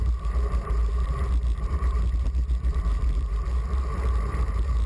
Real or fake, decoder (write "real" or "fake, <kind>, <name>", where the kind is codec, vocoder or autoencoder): fake, vocoder, BigVGAN v2